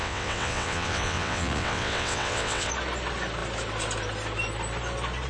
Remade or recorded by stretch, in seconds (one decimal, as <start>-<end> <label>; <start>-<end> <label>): 0.0-2.7 remade; 2.7-5.3 recorded